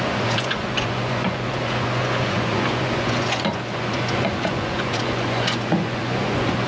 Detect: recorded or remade remade